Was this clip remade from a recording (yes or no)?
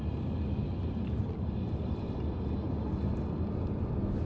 no